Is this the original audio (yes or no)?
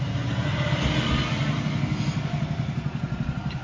yes